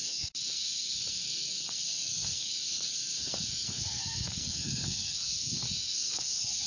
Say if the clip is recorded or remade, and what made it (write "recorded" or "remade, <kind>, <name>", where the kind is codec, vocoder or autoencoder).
remade, codec, SNAC